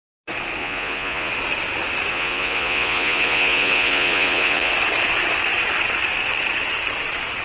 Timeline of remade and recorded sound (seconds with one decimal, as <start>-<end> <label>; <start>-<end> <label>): 0.0-0.6 recorded; 0.6-1.3 remade; 1.3-2.1 recorded; 2.1-4.7 remade; 4.7-7.4 recorded